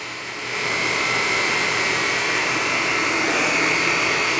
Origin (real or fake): fake